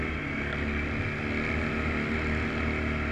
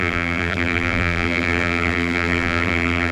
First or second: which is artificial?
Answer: second